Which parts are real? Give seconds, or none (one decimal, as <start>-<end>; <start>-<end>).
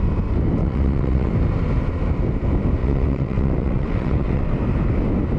0.0-0.6; 1.3-2.8; 4.4-5.4